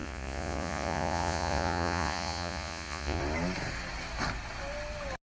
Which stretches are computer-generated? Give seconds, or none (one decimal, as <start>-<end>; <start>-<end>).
0.0-3.2